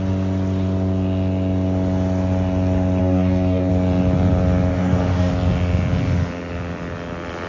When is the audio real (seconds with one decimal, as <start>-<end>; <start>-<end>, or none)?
0.0-3.0; 3.7-4.7; 5.3-7.5